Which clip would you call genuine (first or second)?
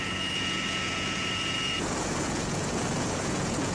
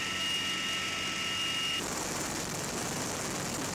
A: second